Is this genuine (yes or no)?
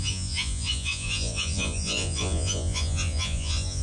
no